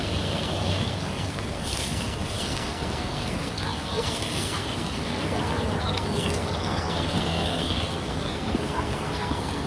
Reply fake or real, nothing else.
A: fake